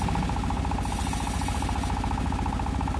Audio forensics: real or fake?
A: real